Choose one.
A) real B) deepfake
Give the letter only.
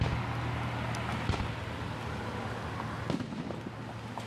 A